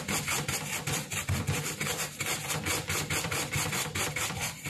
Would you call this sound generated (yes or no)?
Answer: yes